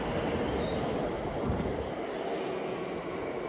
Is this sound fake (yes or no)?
no